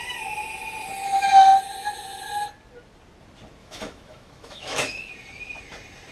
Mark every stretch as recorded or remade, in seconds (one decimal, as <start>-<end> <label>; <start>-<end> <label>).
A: 0.0-3.6 recorded; 3.6-5.1 remade; 5.1-6.1 recorded